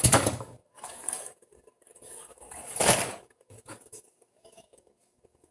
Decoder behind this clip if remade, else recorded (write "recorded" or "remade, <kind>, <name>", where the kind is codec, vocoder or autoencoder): remade, codec, DAC